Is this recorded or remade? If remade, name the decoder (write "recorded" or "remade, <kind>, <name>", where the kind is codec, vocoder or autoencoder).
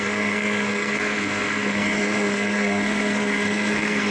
remade, codec, SNAC